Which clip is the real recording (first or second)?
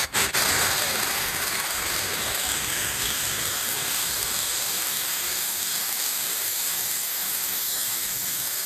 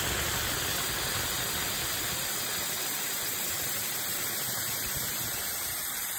second